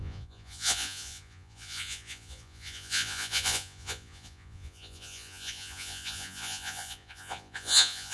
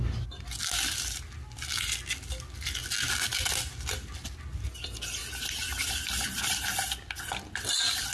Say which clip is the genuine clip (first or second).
second